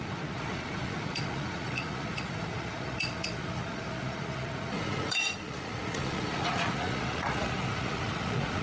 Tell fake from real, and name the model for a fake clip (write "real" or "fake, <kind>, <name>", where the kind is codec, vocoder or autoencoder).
fake, vocoder, Vocos